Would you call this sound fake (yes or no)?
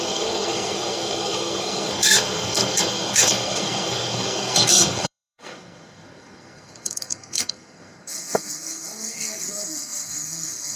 yes